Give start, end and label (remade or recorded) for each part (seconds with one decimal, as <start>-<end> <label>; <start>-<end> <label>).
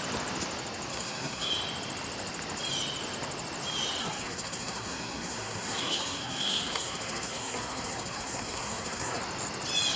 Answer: 0.0-0.9 recorded; 0.9-1.5 remade; 1.5-4.0 recorded; 4.0-9.2 remade; 9.2-10.0 recorded